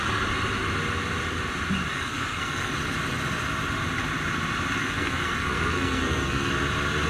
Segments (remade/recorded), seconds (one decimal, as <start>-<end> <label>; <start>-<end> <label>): 0.0-1.9 recorded; 1.9-2.7 remade; 2.7-4.8 recorded; 4.8-6.5 remade; 6.5-7.1 recorded